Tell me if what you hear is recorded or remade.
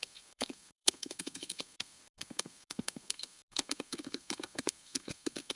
remade